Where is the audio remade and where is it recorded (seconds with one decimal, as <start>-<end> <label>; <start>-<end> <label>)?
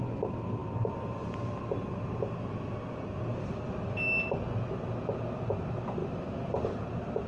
0.0-7.3 recorded